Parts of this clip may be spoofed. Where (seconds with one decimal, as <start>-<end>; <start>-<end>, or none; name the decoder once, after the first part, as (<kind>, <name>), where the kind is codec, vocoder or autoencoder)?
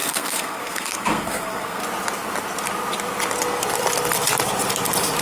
0.0-1.8 (codec, SNAC)